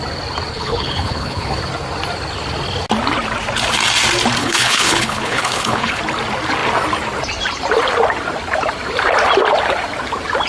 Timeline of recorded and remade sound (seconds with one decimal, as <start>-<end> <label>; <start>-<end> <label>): 0.0-0.5 recorded; 0.5-1.6 remade; 1.6-4.4 recorded; 4.4-6.0 remade; 6.0-10.5 recorded